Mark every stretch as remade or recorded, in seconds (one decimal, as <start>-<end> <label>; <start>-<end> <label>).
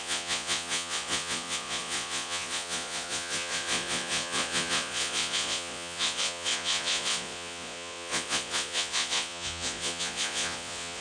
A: 0.0-11.0 remade